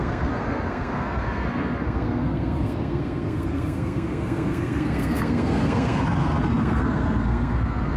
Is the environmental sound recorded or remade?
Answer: remade